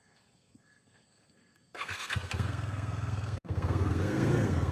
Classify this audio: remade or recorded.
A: remade